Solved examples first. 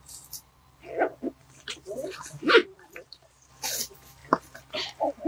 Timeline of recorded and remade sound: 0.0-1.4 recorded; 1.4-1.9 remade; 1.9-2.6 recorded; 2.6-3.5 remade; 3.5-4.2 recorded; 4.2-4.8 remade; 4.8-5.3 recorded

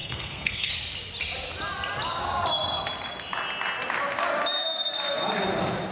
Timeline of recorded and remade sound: 0.0-0.7 remade; 0.7-5.9 recorded

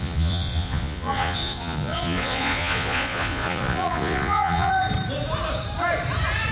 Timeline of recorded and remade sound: 0.0-4.7 remade; 4.7-6.5 recorded

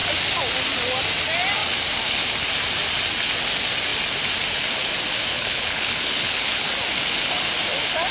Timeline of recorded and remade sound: 0.0-5.3 recorded; 5.3-6.7 remade; 6.7-8.1 recorded

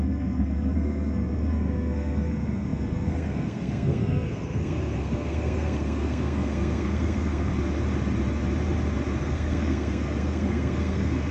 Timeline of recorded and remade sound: 0.0-7.5 remade; 7.5-9.2 recorded; 9.2-11.3 remade

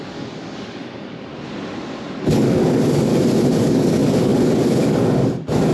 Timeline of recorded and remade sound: 0.0-1.3 remade; 1.3-2.2 recorded; 2.2-3.1 remade; 3.1-3.6 recorded; 3.6-5.7 remade